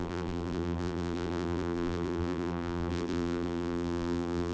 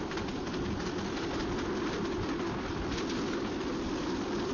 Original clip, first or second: second